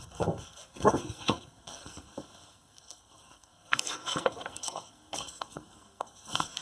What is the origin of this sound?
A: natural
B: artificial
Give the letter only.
B